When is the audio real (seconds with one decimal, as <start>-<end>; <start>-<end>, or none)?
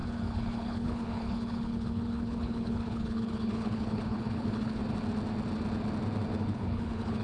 4.8-6.4